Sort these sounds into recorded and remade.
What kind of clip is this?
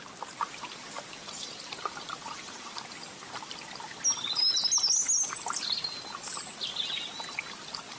recorded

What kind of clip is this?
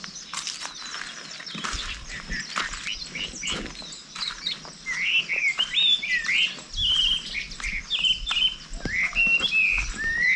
recorded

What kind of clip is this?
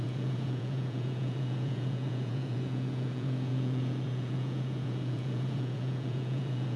remade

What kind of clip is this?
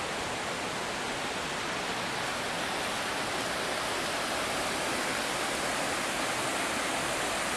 recorded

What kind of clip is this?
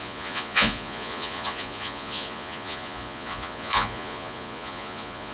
remade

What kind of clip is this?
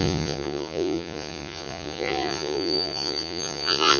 remade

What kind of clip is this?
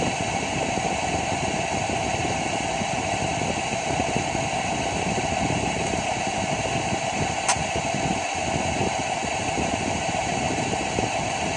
recorded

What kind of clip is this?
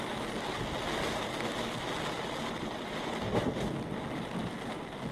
recorded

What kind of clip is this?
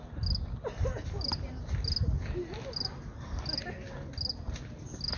recorded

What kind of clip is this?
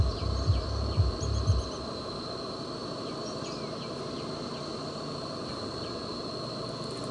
recorded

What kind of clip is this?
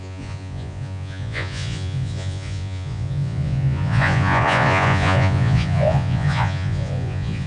remade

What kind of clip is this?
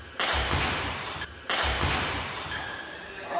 recorded